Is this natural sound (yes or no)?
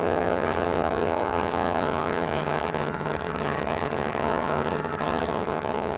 no